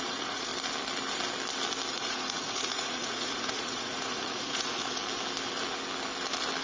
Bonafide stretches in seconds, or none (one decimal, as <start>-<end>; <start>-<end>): 0.5-1.9; 5.0-6.6